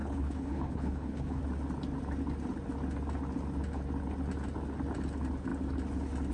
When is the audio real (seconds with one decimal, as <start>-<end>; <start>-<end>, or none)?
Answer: 1.4-6.3